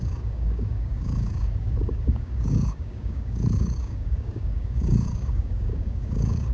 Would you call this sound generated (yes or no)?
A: yes